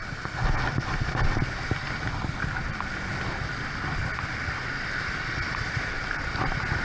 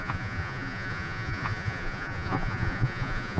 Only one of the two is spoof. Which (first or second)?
second